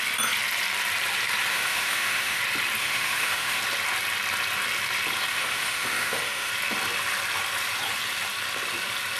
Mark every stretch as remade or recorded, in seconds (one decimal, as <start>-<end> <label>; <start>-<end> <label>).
0.0-1.5 recorded; 1.5-2.4 remade; 2.4-2.8 recorded; 2.8-3.6 remade; 3.6-5.3 recorded; 5.3-6.5 remade; 6.5-9.2 recorded